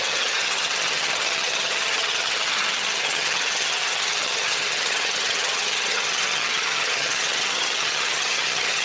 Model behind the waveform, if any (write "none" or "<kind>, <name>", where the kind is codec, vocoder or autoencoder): vocoder, HiFi-GAN